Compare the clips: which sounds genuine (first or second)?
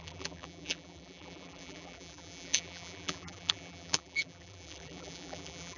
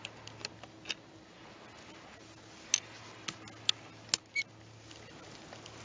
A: second